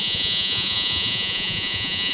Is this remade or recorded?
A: remade